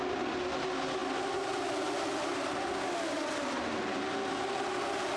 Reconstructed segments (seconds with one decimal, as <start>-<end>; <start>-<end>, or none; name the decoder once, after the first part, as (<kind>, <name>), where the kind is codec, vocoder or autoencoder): none